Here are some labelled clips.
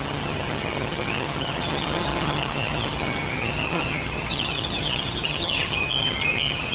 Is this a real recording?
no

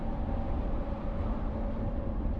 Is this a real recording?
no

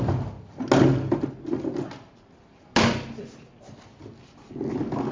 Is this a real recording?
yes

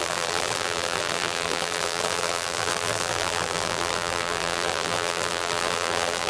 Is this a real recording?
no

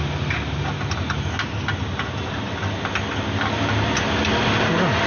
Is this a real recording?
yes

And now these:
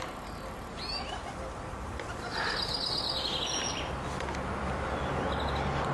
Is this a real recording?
yes